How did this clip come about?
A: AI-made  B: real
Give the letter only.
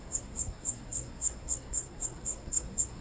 A